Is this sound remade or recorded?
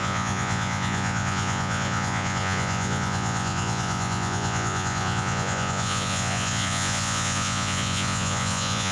remade